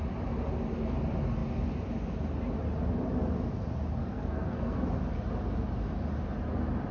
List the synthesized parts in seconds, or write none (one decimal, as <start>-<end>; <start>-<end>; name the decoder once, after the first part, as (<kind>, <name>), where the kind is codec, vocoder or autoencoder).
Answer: 4.0-4.8 (codec, SNAC)